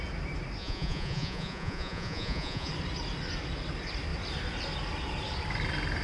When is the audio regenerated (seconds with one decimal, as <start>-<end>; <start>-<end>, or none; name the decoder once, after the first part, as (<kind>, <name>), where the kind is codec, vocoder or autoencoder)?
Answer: 0.6-2.7 (vocoder, Vocos)

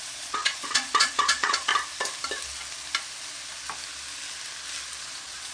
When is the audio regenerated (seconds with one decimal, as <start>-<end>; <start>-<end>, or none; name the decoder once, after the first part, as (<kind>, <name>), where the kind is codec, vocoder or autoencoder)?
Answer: 0.0-1.7 (vocoder, Vocos); 5.0-5.5

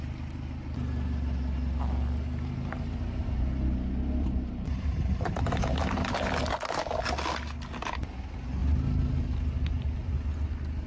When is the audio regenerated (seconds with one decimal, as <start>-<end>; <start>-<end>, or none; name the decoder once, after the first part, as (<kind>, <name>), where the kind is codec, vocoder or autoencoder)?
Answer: none

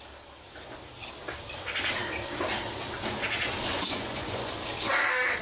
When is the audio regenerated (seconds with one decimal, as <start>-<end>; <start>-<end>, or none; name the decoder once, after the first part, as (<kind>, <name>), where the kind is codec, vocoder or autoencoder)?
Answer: 3.7-4.5 (vocoder, Vocos)